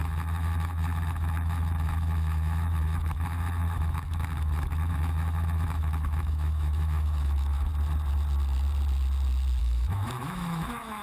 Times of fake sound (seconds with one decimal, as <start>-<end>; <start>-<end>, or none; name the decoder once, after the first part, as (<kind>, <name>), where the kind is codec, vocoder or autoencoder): 0.0-7.7 (autoencoder, DAC-VAE); 9.6-11.0